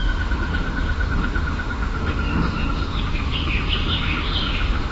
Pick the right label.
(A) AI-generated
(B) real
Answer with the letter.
A